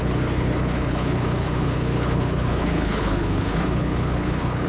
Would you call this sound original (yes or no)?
no